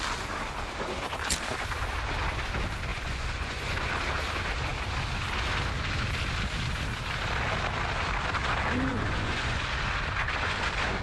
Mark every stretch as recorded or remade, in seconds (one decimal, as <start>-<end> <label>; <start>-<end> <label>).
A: 0.0-2.9 recorded; 2.9-3.9 remade; 3.9-8.9 recorded; 8.9-9.6 remade; 9.6-11.0 recorded